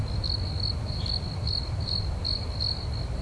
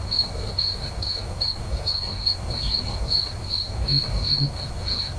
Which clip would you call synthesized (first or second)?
second